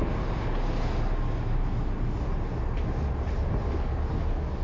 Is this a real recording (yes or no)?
yes